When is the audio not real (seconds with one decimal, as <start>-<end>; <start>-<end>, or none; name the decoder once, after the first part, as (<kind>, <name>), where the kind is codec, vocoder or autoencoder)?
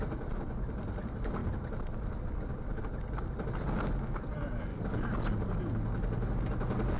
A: 1.4-2.1 (vocoder, BigVGAN v2)